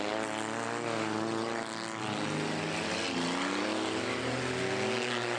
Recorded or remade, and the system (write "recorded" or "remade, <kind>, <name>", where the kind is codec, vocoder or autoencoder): recorded